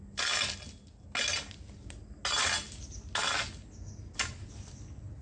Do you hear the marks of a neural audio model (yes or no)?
no